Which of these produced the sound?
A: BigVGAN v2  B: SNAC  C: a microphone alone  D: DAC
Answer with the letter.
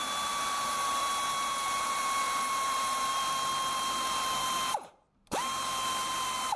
A